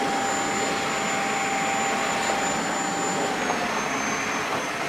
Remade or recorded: recorded